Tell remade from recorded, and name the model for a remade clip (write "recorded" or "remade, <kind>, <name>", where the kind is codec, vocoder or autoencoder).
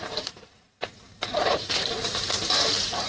remade, vocoder, BigVGAN v2